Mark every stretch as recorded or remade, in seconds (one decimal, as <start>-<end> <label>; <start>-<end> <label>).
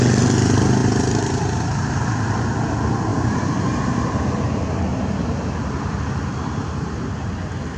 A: 0.0-0.8 recorded; 0.8-2.5 remade; 2.5-3.1 recorded; 3.1-4.1 remade; 4.1-6.3 recorded; 6.3-7.3 remade; 7.3-7.8 recorded